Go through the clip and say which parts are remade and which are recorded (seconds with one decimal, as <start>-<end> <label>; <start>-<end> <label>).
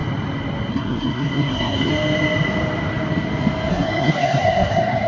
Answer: 0.0-0.7 recorded; 0.7-1.9 remade; 1.9-3.7 recorded; 3.7-5.1 remade